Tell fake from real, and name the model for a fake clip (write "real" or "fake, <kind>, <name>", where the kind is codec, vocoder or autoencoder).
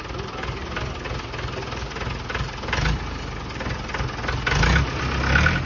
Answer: real